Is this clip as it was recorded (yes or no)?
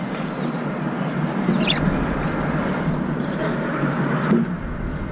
yes